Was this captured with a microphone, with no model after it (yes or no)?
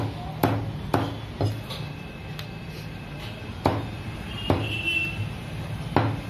yes